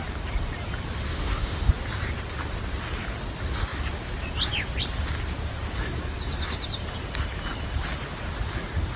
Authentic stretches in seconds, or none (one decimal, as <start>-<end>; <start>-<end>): 0.0-1.1; 1.7-9.0